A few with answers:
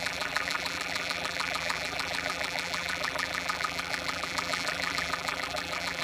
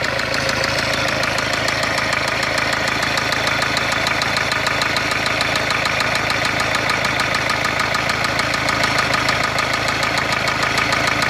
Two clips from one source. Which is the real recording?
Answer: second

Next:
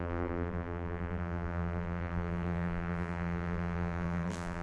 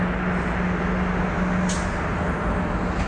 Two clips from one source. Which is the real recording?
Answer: second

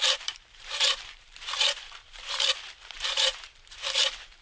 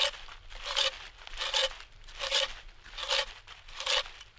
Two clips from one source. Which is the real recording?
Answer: second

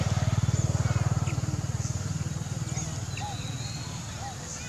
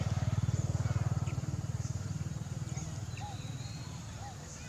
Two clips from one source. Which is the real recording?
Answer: first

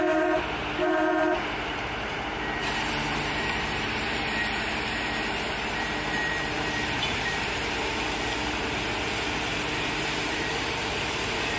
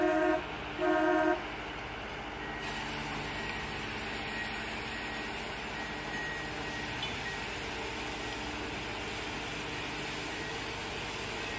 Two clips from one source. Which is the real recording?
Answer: second